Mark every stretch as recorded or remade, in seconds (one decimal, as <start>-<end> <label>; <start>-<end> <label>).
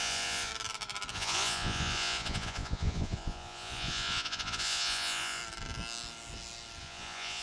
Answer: 0.0-0.5 remade; 0.5-1.1 recorded; 1.1-5.4 remade; 5.4-6.8 recorded; 6.8-7.4 remade